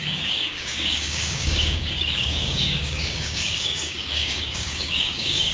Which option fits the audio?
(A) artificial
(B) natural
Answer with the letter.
A